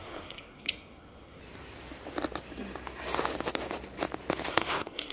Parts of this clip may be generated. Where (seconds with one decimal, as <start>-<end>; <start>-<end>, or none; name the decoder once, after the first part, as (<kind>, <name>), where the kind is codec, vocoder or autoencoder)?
0.0-1.4 (codec, SNAC); 4.5-5.1